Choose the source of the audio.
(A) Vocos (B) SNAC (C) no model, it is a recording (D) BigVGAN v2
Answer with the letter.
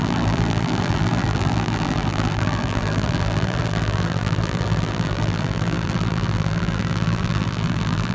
D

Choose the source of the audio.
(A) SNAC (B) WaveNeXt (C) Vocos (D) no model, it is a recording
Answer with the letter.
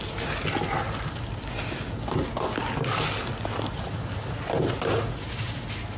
D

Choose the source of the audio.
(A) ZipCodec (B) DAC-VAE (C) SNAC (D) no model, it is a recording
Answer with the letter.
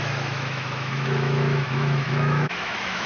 B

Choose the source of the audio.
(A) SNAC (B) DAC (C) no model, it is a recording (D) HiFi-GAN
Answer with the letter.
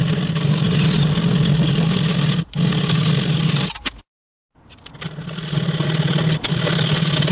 C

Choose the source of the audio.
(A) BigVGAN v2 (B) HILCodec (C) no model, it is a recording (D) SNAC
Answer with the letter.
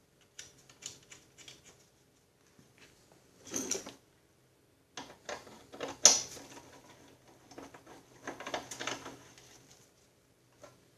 C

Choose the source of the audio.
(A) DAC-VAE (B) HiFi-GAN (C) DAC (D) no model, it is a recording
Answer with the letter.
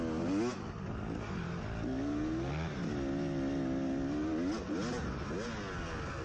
D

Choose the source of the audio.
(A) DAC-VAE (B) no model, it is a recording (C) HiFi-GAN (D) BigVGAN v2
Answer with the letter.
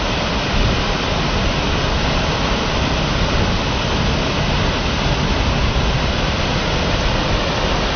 B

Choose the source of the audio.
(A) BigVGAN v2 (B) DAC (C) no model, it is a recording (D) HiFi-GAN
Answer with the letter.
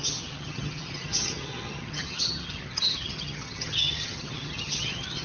D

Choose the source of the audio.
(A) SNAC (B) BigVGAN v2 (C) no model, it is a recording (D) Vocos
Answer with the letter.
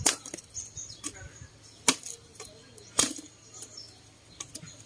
C